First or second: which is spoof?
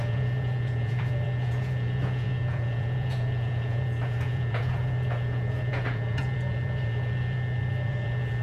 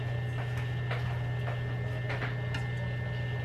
first